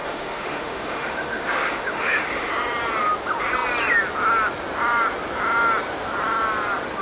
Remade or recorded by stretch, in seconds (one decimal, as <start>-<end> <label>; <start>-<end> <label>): 0.0-2.5 remade; 2.5-7.0 recorded